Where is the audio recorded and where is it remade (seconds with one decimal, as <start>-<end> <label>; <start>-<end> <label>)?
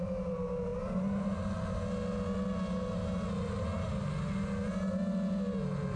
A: 0.0-6.0 recorded